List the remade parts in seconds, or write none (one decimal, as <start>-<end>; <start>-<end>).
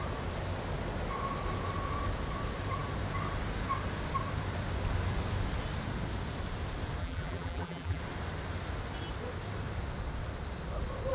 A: 7.0-8.0